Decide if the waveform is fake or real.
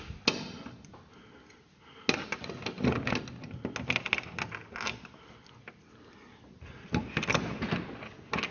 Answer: real